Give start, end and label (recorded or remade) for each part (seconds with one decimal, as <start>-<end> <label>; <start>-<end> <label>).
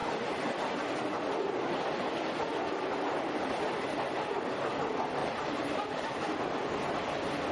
0.0-5.2 recorded; 5.2-6.0 remade; 6.0-7.5 recorded